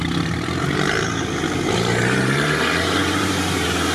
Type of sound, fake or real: fake